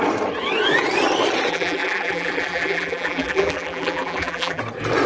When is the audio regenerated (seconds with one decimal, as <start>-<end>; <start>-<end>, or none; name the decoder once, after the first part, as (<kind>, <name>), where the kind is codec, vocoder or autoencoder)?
1.5-4.6 (vocoder, BigVGAN v2)